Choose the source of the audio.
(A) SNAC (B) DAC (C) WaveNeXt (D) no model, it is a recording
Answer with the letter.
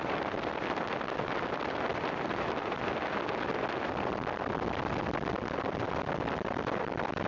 D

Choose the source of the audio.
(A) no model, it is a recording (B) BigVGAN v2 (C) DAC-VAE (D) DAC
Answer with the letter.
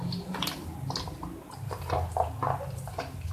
A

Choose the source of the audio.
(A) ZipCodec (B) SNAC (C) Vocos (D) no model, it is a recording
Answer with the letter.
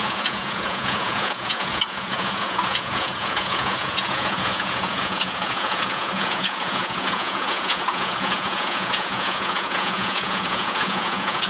C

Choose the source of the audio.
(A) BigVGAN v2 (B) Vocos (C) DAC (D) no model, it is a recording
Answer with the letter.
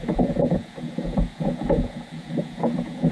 B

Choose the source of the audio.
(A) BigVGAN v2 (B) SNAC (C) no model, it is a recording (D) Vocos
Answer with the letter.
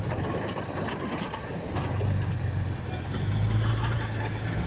C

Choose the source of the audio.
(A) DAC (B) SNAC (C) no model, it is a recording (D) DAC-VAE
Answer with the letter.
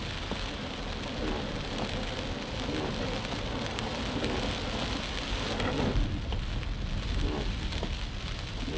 C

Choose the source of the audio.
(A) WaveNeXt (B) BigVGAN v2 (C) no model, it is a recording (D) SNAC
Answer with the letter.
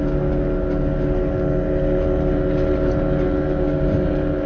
C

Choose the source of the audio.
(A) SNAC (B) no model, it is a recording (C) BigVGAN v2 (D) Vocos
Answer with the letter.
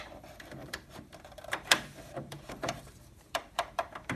C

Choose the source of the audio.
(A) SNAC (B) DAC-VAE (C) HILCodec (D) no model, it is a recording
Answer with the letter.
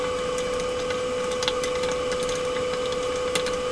D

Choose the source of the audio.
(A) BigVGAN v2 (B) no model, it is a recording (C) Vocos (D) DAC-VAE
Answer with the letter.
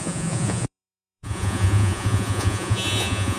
C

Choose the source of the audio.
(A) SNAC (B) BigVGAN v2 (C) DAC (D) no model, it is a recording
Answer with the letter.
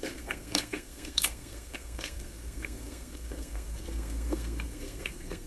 A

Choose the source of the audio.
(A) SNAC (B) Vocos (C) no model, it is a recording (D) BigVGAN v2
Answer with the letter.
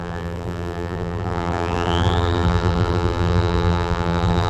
D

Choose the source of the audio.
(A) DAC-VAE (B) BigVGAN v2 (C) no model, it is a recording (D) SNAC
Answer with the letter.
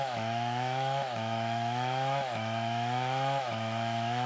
A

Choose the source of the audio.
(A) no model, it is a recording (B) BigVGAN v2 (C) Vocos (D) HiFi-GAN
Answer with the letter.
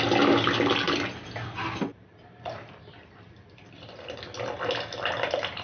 A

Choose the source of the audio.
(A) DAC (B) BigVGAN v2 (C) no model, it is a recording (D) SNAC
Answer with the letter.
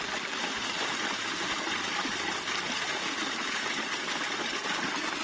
C